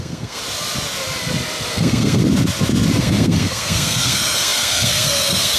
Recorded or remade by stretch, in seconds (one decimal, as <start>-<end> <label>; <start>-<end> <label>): 0.0-0.4 remade; 0.4-1.7 recorded; 1.7-2.2 remade; 2.2-3.0 recorded; 3.0-5.6 remade

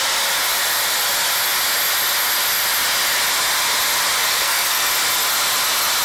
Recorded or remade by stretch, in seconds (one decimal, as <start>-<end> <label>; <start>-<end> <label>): 0.0-4.2 recorded; 4.2-4.9 remade; 4.9-6.0 recorded

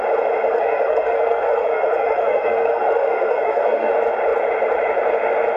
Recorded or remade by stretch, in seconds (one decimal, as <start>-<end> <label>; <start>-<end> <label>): 0.0-0.5 recorded; 0.5-3.9 remade; 3.9-5.6 recorded

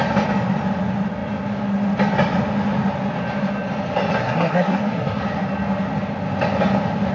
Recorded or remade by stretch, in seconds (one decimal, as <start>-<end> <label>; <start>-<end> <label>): 0.0-4.2 recorded; 4.2-5.2 remade; 5.2-7.1 recorded